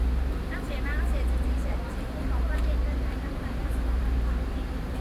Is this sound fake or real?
fake